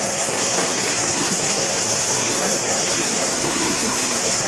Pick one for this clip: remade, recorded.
remade